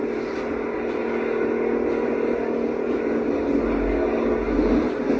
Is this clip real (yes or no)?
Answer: yes